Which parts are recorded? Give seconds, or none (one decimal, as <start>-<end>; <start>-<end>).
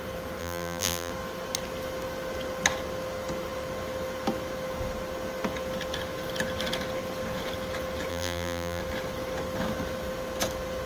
0.0-0.4; 1.1-8.1; 8.8-10.9